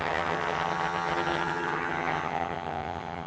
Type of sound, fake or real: fake